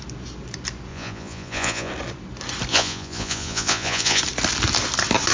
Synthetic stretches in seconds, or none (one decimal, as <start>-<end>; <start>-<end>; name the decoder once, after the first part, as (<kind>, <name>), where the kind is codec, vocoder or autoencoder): 0.9-1.9 (vocoder, Vocos); 2.7-4.2